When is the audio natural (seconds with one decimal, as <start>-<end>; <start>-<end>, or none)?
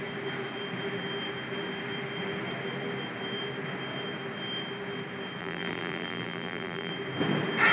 0.0-5.4; 6.9-7.7